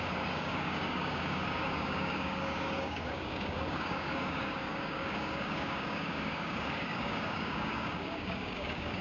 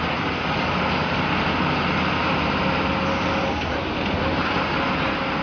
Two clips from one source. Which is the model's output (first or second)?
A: first